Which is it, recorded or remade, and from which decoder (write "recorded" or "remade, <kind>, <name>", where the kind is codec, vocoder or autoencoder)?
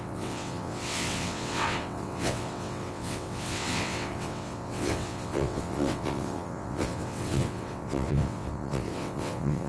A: remade, vocoder, WaveNeXt